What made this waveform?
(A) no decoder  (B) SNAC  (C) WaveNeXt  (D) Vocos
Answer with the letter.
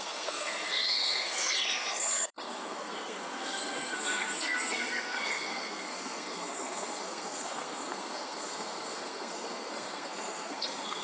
B